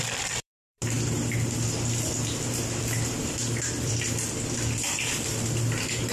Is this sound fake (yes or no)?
yes